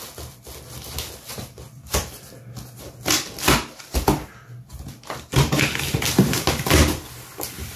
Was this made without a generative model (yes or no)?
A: yes